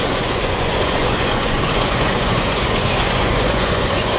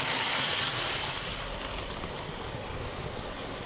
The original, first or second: second